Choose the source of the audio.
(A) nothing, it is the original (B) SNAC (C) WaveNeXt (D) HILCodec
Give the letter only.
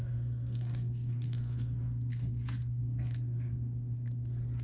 B